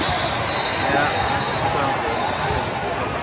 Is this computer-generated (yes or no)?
no